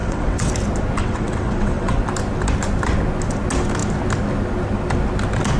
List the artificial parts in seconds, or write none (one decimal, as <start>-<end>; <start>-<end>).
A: 0.0-0.5; 1.0-2.0